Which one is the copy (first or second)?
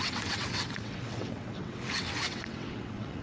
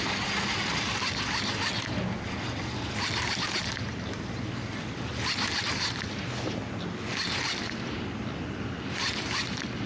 first